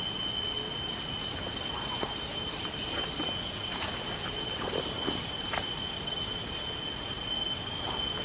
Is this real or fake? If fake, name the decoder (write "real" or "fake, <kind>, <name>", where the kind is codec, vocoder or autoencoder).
real